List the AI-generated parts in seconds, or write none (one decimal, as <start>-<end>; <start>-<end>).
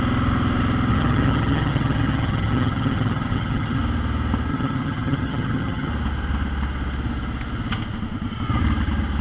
0.9-3.8; 4.5-5.9